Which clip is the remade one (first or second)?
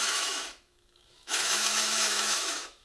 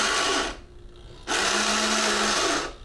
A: first